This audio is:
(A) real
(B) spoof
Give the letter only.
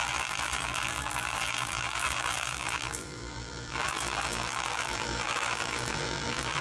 B